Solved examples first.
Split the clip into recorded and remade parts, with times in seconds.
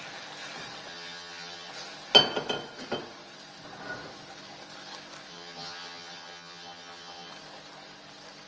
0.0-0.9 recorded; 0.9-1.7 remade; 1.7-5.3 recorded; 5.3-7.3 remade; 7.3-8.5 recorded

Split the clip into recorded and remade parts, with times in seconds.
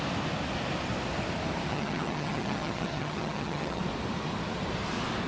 0.0-1.7 recorded; 1.7-3.8 remade; 3.8-5.3 recorded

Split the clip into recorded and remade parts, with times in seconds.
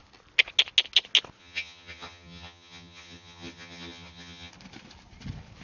0.0-1.4 recorded; 1.4-4.5 remade; 4.5-5.6 recorded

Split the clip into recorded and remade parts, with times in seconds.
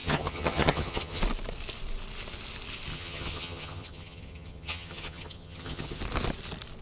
0.0-1.2 remade; 1.2-2.9 recorded; 2.9-6.0 remade; 6.0-6.8 recorded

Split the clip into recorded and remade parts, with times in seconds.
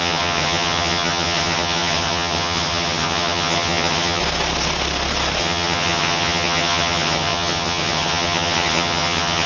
0.0-4.2 remade; 4.2-5.4 recorded; 5.4-9.5 remade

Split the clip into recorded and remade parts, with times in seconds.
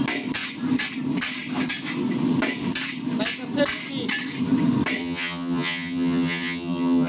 0.0-5.0 recorded; 5.0-7.1 remade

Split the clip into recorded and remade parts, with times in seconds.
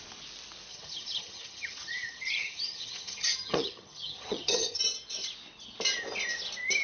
0.0-0.7 recorded; 0.7-4.8 remade; 4.8-6.8 recorded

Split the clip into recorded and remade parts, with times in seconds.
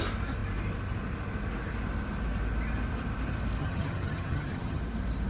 0.0-3.6 recorded; 3.6-4.8 remade; 4.8-5.3 recorded